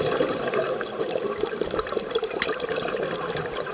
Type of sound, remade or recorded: recorded